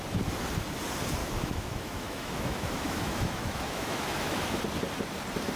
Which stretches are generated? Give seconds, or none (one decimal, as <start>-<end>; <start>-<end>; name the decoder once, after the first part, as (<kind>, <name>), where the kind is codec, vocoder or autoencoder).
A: 1.2-4.6 (autoencoder, DAC-VAE)